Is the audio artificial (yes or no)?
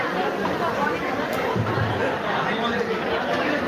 no